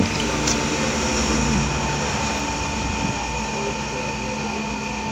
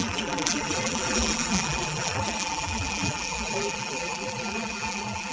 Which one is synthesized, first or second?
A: second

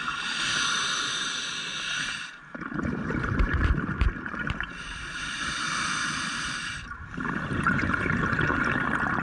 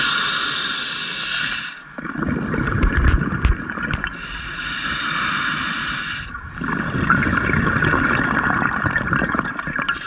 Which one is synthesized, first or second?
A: first